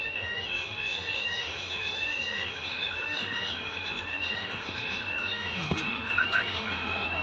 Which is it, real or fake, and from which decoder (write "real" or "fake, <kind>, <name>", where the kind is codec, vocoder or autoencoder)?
fake, autoencoder, DAC-VAE